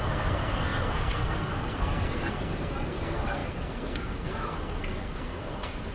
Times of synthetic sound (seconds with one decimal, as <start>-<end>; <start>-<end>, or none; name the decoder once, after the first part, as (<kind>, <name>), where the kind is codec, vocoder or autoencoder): 0.0-5.9 (codec, SNAC)